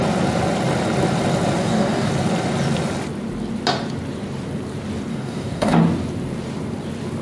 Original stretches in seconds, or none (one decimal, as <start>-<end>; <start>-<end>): 0.0-1.6; 2.1-5.1; 5.8-7.2